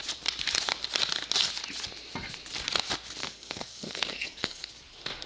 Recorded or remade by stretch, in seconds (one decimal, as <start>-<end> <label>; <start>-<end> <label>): 0.0-3.2 recorded; 3.2-4.7 remade; 4.7-5.3 recorded